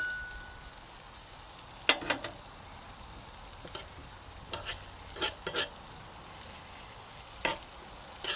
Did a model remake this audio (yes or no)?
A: no